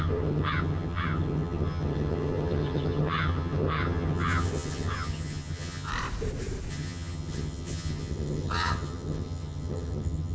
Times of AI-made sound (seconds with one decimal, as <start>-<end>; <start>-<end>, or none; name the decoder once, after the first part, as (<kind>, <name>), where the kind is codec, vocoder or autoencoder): 0.0-5.9 (vocoder, HiFi-GAN); 6.7-10.3